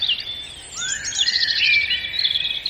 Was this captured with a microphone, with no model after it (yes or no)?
yes